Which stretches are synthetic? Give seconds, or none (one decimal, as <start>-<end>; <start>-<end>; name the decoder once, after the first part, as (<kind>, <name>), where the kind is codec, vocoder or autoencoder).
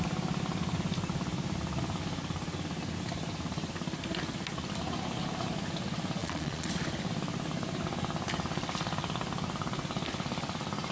6.2-6.7 (vocoder, Vocos)